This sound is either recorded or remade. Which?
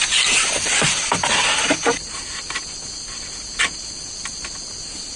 recorded